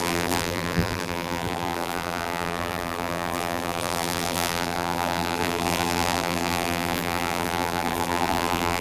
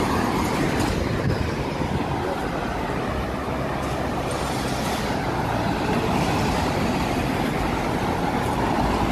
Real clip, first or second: second